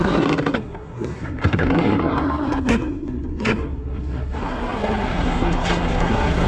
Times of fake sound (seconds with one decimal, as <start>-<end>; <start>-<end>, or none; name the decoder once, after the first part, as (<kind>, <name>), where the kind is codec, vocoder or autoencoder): 0.0-6.5 (codec, SNAC)